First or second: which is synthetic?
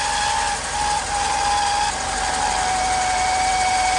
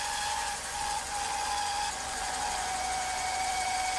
second